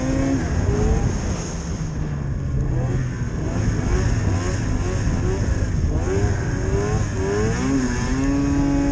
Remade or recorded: recorded